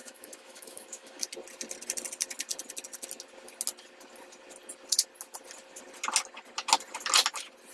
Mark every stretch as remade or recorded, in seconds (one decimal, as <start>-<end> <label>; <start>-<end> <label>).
0.0-1.2 remade; 1.2-7.7 recorded